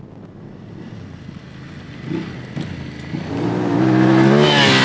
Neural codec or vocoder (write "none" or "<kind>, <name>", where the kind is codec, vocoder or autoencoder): none